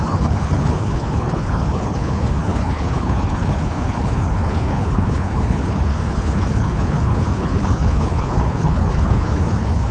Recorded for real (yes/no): no